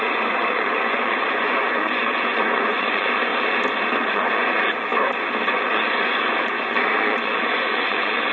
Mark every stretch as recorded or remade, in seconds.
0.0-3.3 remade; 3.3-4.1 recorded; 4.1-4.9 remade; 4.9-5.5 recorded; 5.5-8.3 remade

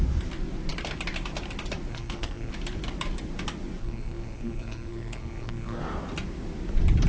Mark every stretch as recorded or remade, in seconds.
0.0-1.9 recorded; 1.9-2.5 remade; 2.5-3.8 recorded; 3.8-5.8 remade; 5.8-7.1 recorded

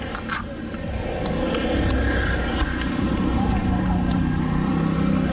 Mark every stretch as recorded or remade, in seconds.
0.0-5.3 recorded

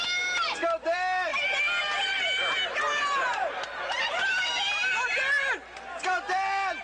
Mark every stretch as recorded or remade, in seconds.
0.0-6.8 recorded